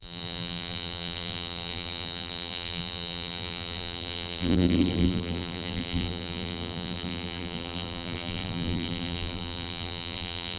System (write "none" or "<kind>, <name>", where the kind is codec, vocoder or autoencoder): vocoder, BigVGAN v2